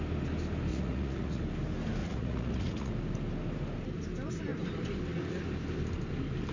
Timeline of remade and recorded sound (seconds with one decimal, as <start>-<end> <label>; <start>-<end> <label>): 0.0-0.7 recorded; 0.7-1.4 remade; 1.4-2.0 recorded; 2.0-2.9 remade; 2.9-6.5 recorded